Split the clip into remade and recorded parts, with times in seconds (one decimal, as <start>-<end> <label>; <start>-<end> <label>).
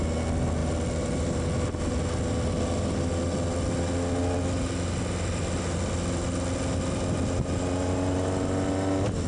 0.0-9.3 recorded